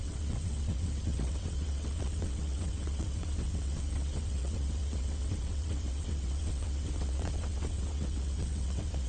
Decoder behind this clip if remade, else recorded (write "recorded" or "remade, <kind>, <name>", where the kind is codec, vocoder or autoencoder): remade, vocoder, WaveNeXt